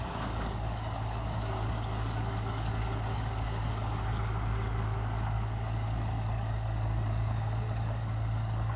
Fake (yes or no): yes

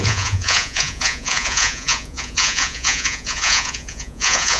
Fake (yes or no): yes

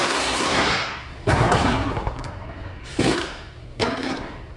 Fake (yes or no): yes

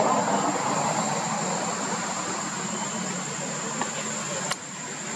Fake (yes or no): no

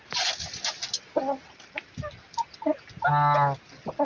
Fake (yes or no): no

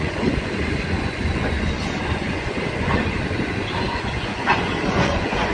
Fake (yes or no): yes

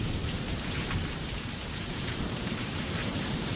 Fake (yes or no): yes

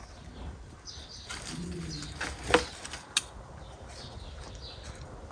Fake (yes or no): no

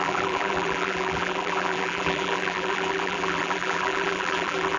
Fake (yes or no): yes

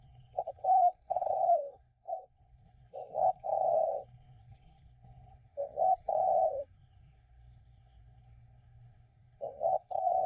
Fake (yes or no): yes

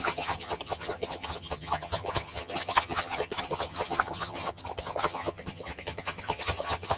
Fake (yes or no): yes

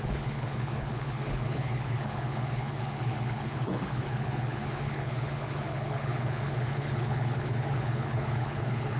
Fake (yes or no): yes